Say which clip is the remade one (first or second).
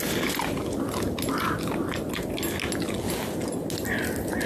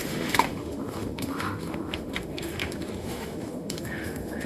second